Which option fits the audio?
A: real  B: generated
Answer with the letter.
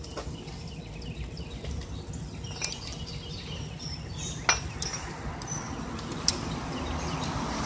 A